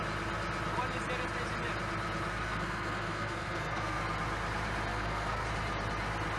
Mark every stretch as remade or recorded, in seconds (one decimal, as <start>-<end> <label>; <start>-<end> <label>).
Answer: 0.0-2.3 recorded; 2.3-4.0 remade; 4.0-4.9 recorded; 4.9-5.5 remade; 5.5-6.4 recorded